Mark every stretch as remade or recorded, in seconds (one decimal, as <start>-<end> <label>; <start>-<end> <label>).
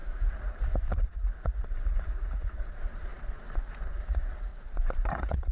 0.0-3.1 remade; 3.1-3.8 recorded; 3.8-4.5 remade; 4.5-5.1 recorded; 5.1-5.5 remade